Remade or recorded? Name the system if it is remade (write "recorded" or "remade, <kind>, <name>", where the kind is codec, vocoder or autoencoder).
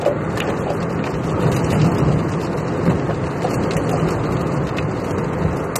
recorded